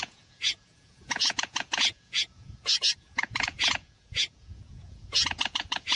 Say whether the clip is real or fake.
fake